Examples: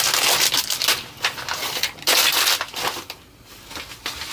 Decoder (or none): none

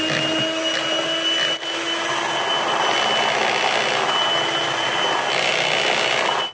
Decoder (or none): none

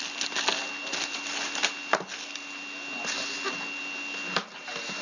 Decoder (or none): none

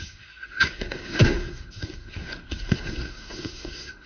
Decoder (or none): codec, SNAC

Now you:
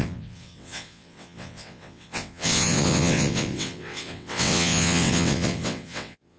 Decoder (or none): vocoder, WaveNeXt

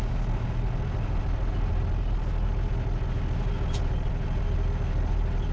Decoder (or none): none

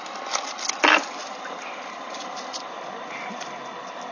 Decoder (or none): none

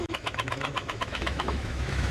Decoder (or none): autoencoder, DAC-VAE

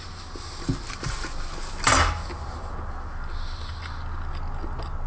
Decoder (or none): none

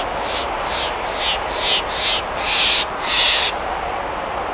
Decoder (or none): none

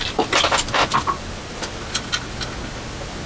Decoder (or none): none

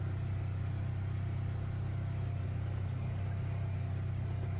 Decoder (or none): none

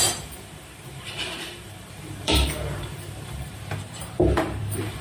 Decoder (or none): vocoder, BigVGAN v2